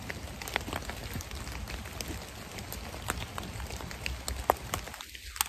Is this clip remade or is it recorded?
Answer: recorded